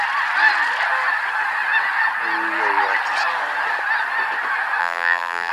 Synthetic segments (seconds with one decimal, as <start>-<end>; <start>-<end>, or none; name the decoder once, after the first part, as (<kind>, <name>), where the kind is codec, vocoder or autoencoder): 4.8-5.5 (vocoder, BigVGAN v2)